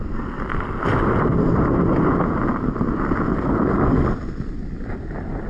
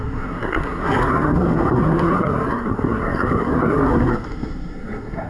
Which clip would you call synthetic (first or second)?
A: second